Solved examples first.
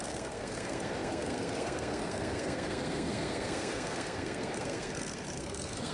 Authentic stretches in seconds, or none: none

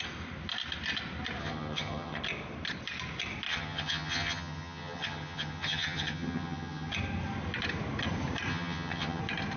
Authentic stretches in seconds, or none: 0.0-1.4; 2.2-3.5; 6.9-8.5; 9.2-9.6

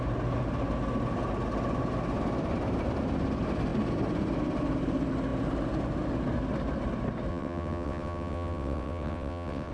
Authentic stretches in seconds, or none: 0.0-7.3

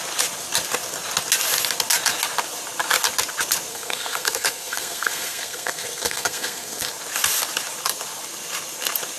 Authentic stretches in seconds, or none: 0.0-3.7; 6.9-9.2

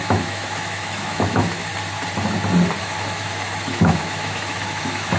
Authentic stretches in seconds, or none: 1.7-2.8

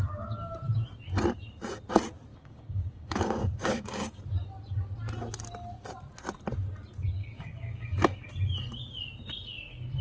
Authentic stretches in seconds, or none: 0.0-2.3; 4.2-7.2; 8.3-10.0